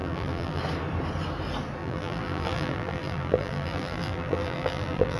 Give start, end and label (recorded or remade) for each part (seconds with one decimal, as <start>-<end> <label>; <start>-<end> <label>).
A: 0.0-0.6 remade; 0.6-1.8 recorded; 1.8-5.2 remade